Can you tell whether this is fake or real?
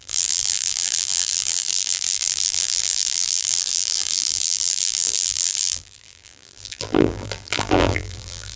fake